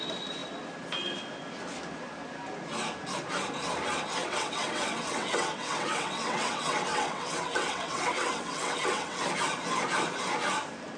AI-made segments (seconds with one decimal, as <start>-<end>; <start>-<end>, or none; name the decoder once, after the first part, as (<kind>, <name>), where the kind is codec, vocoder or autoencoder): 4.2-9.2 (vocoder, WaveNeXt)